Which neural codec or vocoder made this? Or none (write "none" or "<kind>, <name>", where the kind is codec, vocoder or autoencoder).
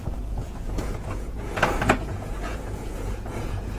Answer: vocoder, Vocos